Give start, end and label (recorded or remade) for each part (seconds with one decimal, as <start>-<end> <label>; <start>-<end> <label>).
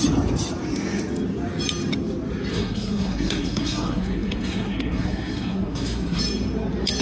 0.0-2.5 recorded; 2.5-6.2 remade; 6.2-7.0 recorded